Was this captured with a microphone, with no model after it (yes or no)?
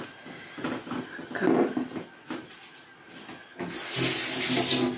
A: yes